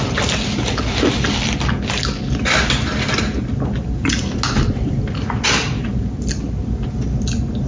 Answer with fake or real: real